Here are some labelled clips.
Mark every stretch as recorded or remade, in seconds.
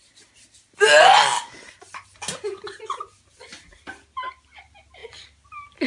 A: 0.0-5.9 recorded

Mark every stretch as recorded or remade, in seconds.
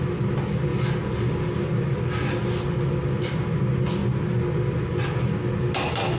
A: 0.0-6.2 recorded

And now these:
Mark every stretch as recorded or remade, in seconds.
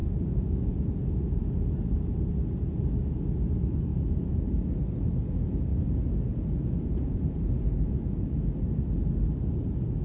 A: 0.0-1.5 remade; 1.5-3.9 recorded; 3.9-4.4 remade; 4.4-5.7 recorded; 5.7-8.2 remade; 8.2-10.0 recorded